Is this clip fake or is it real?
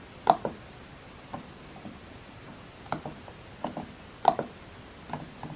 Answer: real